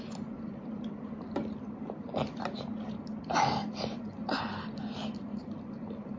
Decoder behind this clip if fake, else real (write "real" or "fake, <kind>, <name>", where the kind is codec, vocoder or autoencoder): real